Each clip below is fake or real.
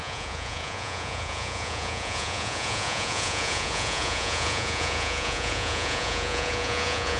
fake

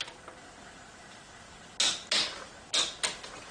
real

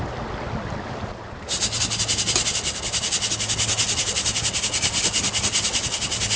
real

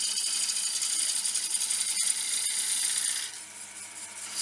real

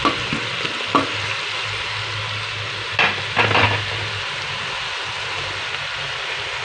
real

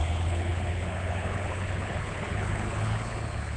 fake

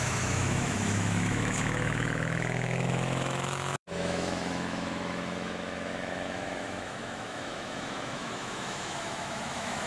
fake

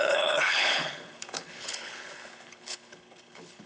fake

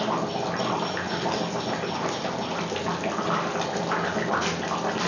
real